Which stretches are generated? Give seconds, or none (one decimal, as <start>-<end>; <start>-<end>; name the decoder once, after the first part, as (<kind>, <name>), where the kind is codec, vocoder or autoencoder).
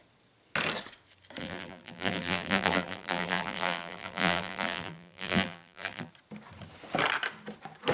1.4-6.1 (vocoder, BigVGAN v2)